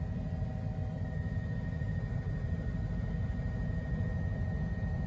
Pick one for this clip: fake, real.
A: real